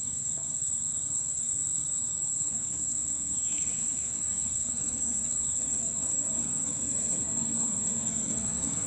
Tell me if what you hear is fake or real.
fake